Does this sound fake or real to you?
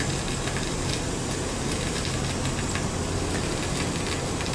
real